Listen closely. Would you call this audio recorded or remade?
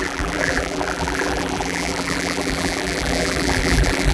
remade